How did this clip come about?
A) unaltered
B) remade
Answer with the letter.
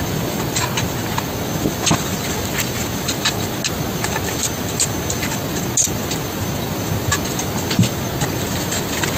A